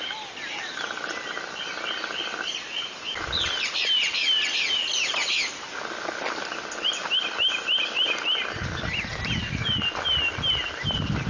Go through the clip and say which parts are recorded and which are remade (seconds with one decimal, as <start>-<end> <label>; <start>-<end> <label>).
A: 0.0-11.3 recorded